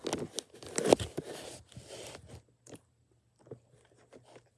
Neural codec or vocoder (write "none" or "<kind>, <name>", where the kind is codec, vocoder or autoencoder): none